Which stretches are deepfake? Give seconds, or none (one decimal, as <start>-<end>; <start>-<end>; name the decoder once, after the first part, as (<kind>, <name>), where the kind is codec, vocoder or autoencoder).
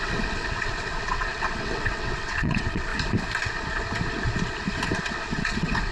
0.0-2.9 (vocoder, WaveNeXt); 5.0-5.9